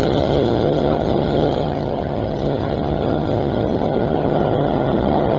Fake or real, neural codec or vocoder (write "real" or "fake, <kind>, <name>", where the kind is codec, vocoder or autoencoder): fake, vocoder, HiFi-GAN